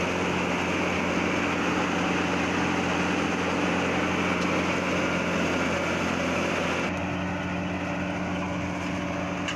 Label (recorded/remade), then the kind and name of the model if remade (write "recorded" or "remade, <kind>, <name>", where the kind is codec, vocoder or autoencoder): recorded